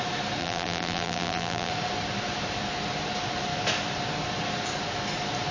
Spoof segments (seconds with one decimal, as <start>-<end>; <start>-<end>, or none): 0.4-1.7